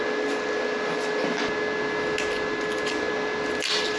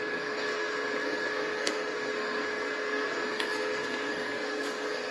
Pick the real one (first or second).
first